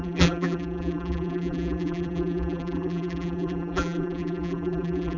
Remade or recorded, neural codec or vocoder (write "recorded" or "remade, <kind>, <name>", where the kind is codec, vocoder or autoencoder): remade, vocoder, BigVGAN v2